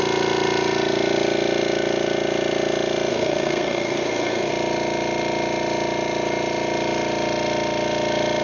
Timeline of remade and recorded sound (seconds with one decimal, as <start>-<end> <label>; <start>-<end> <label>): 0.0-3.1 recorded; 3.1-4.5 remade; 4.5-8.4 recorded